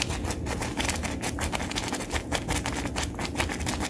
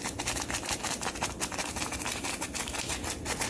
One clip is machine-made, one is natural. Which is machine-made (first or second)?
second